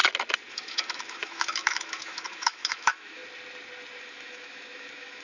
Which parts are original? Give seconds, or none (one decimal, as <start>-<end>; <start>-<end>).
0.0-0.5; 3.2-4.0